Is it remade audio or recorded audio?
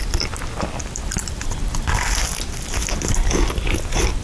remade